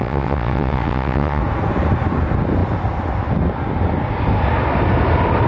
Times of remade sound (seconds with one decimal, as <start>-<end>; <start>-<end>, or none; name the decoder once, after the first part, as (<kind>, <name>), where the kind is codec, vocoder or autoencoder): 0.0-1.4 (vocoder, WaveNeXt)